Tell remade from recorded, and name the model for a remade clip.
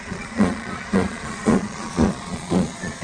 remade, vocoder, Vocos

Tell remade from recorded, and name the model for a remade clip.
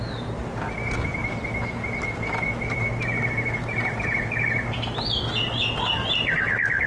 recorded